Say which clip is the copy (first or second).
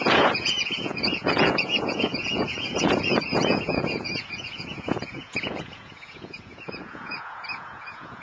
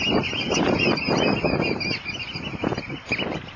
first